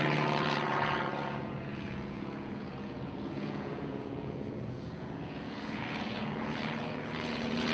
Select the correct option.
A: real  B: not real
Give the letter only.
B